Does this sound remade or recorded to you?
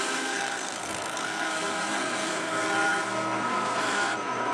remade